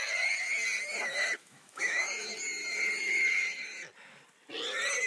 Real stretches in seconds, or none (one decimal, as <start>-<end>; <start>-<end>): 0.0-1.4; 2.0-5.1